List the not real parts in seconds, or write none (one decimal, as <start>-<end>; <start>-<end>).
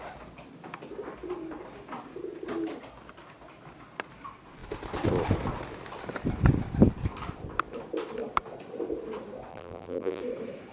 9.5-10.2